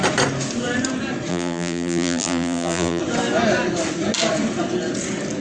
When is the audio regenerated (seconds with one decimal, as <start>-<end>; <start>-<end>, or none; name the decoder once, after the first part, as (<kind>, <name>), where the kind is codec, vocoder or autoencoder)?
1.3-3.0 (vocoder, BigVGAN v2)